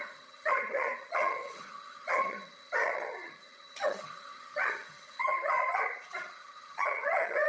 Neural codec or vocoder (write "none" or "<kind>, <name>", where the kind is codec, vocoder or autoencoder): vocoder, HiFi-GAN